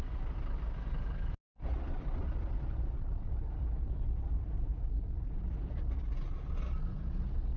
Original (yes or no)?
yes